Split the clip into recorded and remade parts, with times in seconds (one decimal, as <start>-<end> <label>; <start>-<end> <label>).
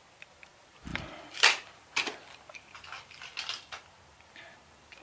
0.0-0.9 recorded; 0.9-3.7 remade; 3.7-5.0 recorded